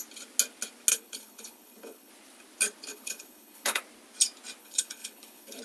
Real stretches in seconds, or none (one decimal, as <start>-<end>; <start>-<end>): 0.0-0.9; 2.1-2.9; 3.8-4.6